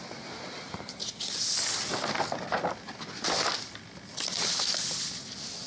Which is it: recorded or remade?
recorded